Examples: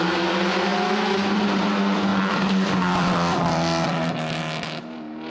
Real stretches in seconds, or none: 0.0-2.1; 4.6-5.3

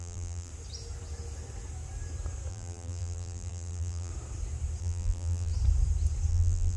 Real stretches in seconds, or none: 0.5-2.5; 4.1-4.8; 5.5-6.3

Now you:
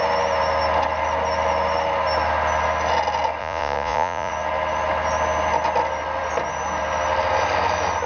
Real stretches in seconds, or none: 0.0-3.4; 4.3-8.1

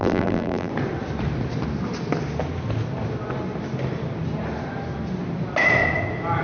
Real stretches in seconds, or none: 0.7-6.4

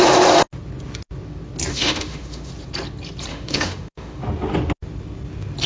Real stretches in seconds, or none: 0.0-1.7; 2.5-3.3; 4.2-5.7

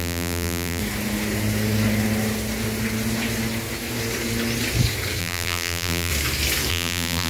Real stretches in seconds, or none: 0.8-5.2; 6.1-6.7

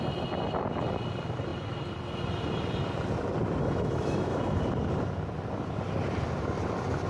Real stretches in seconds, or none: 0.0-3.6; 4.6-7.1